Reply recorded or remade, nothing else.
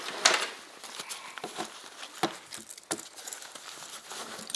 recorded